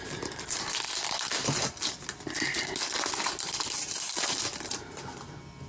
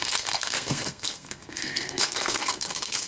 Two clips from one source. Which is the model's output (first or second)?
second